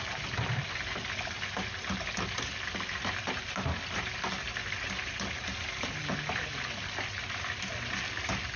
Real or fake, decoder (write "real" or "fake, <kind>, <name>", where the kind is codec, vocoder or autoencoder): real